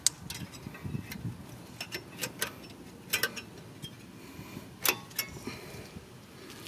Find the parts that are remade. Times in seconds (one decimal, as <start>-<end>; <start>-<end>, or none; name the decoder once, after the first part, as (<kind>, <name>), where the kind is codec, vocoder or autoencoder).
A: none